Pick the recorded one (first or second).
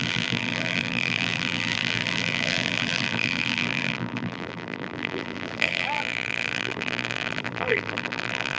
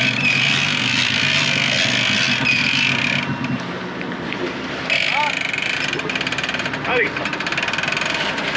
second